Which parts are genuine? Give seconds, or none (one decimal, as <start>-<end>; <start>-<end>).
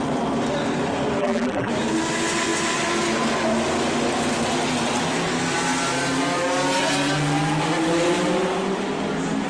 0.0-1.2; 1.7-9.5